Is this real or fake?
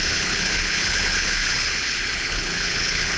fake